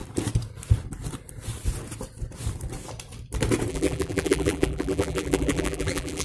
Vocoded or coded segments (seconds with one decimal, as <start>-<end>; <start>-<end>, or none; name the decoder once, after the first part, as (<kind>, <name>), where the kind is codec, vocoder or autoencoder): 3.7-6.2 (vocoder, BigVGAN v2)